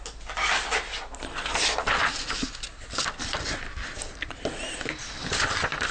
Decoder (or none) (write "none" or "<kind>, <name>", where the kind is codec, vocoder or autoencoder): none